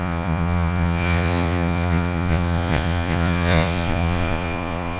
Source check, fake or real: fake